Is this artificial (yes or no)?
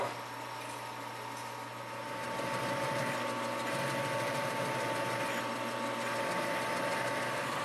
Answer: no